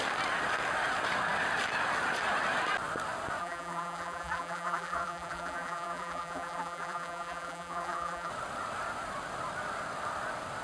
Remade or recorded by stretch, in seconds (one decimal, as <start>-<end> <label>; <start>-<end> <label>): 0.0-3.4 recorded; 3.4-8.3 remade; 8.3-10.6 recorded